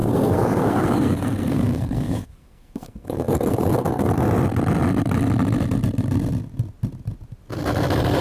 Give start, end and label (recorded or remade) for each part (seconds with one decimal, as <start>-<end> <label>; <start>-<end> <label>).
0.0-4.1 remade; 4.1-8.2 recorded